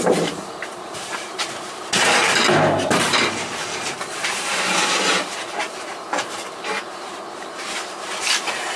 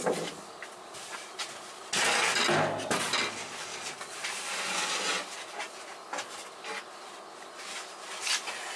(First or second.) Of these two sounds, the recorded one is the second